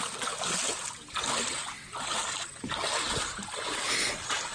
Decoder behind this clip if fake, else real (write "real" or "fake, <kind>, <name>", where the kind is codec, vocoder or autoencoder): real